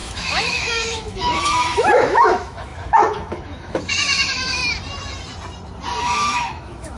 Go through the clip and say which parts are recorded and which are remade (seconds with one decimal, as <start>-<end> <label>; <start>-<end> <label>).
0.0-4.6 remade; 4.6-6.0 recorded; 6.0-7.0 remade